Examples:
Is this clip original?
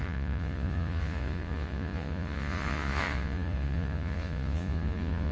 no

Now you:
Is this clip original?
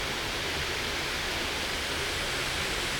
yes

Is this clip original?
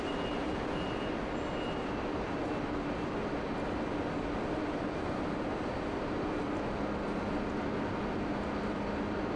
yes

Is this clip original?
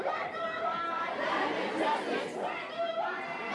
yes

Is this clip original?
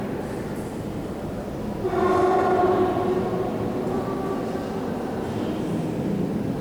yes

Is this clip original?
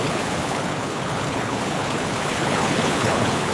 no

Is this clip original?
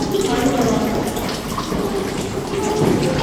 no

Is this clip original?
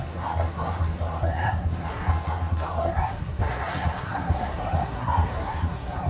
no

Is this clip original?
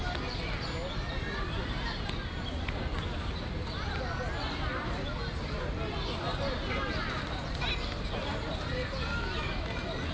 yes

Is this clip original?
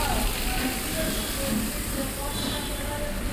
yes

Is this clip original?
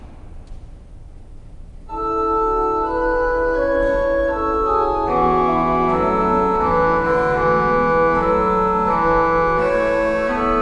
yes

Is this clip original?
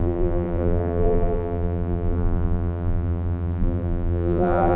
no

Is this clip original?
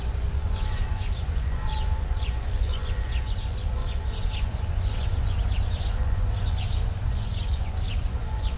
no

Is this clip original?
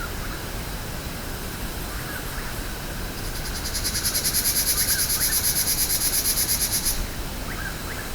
yes